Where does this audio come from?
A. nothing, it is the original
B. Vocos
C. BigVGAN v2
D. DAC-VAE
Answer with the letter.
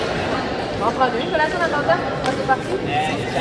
A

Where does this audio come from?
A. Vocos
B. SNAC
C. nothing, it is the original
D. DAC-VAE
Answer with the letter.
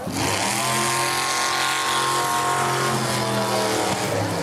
C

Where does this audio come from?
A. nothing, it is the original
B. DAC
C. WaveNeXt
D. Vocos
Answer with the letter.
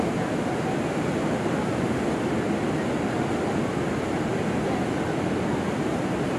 A